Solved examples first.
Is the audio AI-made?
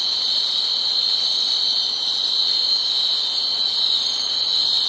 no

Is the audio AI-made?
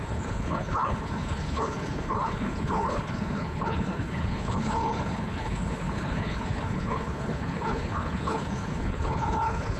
yes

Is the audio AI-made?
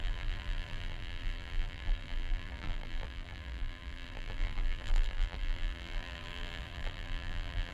yes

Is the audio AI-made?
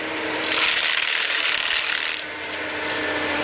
yes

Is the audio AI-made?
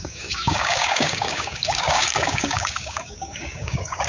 yes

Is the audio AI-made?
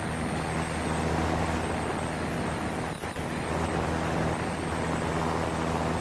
no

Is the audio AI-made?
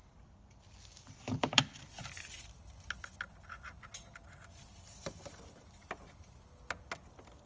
no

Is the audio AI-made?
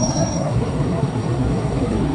yes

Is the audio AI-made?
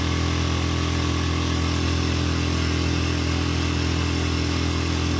no